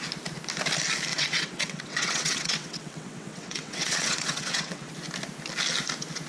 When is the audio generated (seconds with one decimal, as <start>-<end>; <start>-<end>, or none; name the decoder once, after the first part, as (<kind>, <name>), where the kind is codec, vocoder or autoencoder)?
1.1-4.9 (vocoder, WaveNeXt)